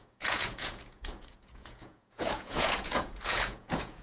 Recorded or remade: remade